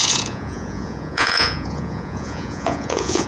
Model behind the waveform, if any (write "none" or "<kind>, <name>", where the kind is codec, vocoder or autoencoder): vocoder, Vocos